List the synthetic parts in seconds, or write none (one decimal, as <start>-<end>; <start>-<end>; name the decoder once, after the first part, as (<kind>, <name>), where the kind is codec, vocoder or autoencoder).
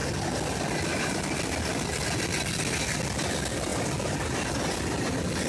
none